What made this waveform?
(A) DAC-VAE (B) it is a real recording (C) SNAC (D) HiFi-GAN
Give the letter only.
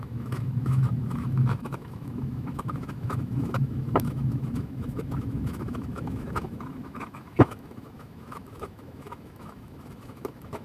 A